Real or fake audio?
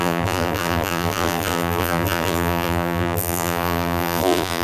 fake